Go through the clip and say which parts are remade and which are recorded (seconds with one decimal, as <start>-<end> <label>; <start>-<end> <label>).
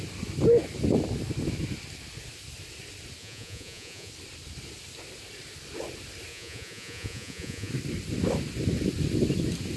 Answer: 0.0-3.2 recorded; 3.2-4.1 remade; 4.1-6.3 recorded; 6.3-7.7 remade; 7.7-9.8 recorded